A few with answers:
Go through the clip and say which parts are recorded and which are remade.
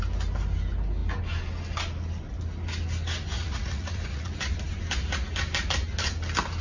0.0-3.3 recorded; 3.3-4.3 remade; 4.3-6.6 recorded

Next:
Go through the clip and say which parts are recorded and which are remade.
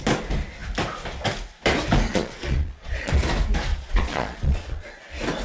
0.0-2.1 recorded; 2.1-3.1 remade; 3.1-3.7 recorded; 3.7-5.0 remade; 5.0-5.4 recorded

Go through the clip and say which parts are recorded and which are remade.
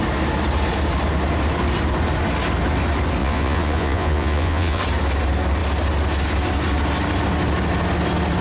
0.0-3.2 recorded; 3.2-4.8 remade; 4.8-8.4 recorded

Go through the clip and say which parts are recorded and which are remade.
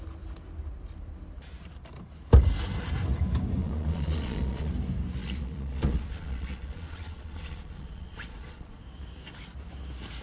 0.0-3.6 recorded; 3.6-4.7 remade; 4.7-5.2 recorded; 5.2-8.8 remade; 8.8-10.2 recorded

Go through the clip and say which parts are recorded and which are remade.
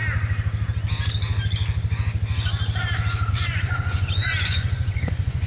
0.0-3.3 recorded; 3.3-5.5 remade